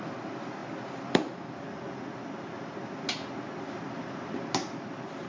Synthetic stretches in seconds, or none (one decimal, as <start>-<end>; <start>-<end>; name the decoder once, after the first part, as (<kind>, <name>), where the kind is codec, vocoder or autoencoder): none